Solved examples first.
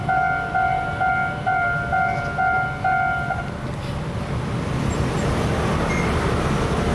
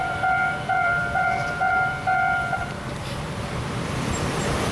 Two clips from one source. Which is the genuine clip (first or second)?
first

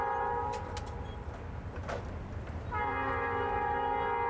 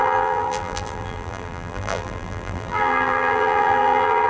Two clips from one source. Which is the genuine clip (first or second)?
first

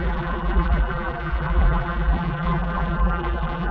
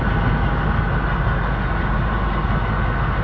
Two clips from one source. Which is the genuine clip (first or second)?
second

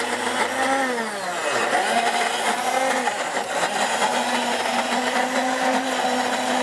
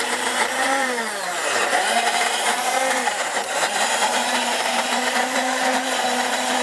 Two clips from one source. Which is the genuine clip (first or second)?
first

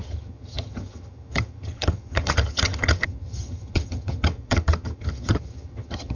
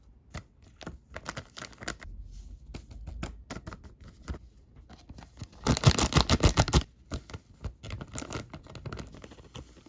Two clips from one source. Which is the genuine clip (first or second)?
second